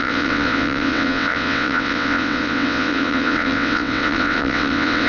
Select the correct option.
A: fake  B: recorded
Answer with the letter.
A